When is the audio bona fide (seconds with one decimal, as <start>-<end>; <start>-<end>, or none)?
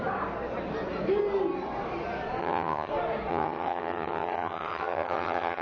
0.0-2.4; 2.9-3.3